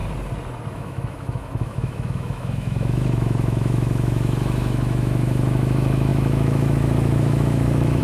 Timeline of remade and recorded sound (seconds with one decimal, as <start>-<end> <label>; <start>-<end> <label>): 0.0-0.7 recorded; 0.7-8.0 remade